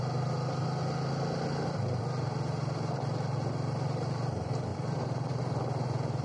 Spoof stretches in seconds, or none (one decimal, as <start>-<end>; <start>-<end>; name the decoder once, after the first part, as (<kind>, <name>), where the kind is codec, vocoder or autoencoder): none